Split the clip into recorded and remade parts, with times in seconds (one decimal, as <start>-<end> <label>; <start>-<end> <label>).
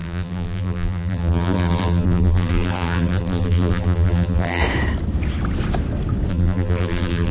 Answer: 0.0-4.6 remade; 4.6-6.3 recorded; 6.3-7.3 remade